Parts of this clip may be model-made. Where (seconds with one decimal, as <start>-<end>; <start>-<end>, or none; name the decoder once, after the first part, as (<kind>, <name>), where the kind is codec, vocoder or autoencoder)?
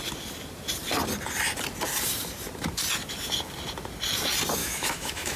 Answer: 4.6-5.4 (autoencoder, DAC-VAE)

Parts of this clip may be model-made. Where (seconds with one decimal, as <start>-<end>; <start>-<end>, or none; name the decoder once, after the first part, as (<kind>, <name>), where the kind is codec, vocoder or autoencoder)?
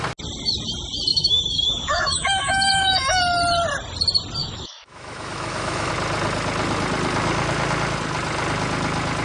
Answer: 1.1-3.2 (autoencoder, DAC-VAE); 4.4-5.9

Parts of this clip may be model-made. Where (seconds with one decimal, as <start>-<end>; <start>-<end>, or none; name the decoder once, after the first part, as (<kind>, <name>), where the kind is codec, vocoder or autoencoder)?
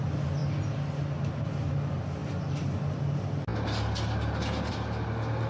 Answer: none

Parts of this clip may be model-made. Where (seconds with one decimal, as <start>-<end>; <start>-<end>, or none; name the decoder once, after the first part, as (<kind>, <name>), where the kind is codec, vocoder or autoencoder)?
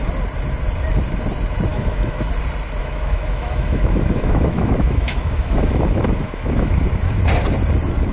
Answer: 1.7-2.3 (autoencoder, DAC-VAE); 2.8-6.8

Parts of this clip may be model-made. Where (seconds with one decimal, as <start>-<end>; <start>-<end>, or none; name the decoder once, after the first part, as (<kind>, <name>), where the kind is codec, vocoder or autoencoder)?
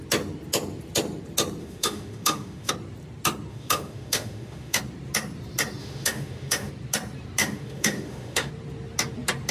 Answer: 1.6-2.7 (autoencoder, DAC-VAE); 3.5-4.8; 5.8-6.7; 7.4-8.5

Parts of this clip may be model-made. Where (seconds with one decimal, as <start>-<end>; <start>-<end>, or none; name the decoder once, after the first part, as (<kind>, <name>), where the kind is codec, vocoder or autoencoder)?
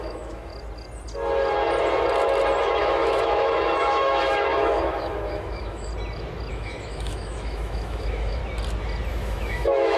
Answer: 0.0-0.5 (autoencoder, DAC-VAE); 2.6-5.9; 6.5-8.4; 9.1-10.0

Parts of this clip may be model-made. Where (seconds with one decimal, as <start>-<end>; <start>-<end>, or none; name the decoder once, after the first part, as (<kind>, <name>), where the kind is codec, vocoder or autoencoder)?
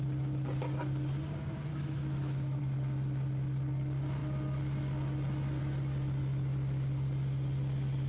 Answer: 1.7-2.6 (autoencoder, DAC-VAE)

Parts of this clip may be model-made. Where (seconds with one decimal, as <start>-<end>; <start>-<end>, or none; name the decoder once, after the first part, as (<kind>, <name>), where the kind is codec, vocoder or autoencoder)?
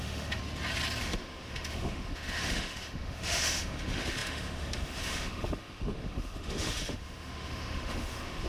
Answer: 0.0-0.4 (autoencoder, DAC-VAE); 1.0-8.5